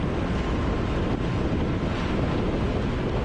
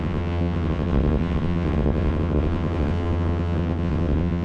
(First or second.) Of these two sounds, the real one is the first